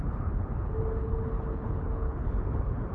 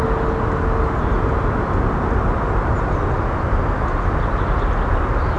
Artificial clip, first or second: first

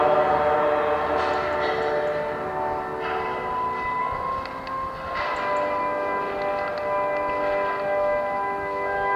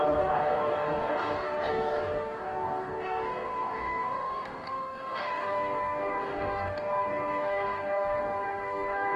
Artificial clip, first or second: second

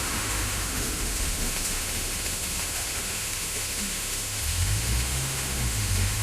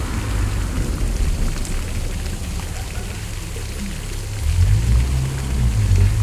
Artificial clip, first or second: first